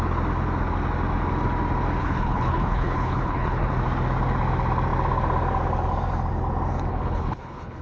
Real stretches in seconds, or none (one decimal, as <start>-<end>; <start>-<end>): 0.0-2.0; 3.7-6.9